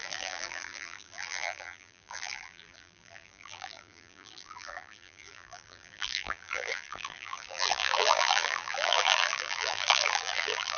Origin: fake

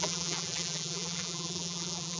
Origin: fake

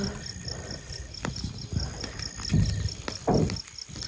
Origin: real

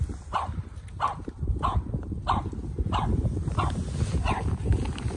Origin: real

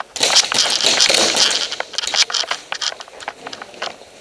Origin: real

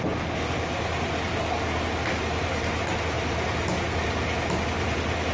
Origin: real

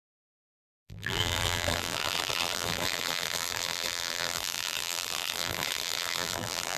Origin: fake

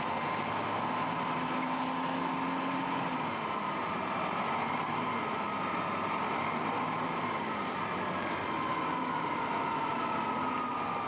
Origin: real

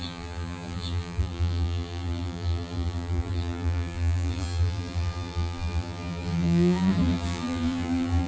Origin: fake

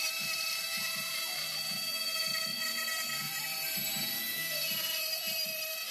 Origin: fake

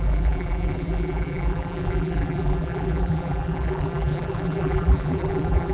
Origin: fake